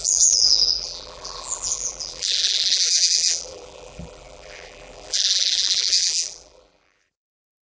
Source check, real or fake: fake